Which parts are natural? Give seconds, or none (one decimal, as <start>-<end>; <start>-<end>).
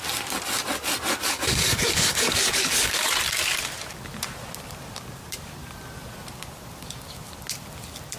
0.0-1.2; 3.1-8.2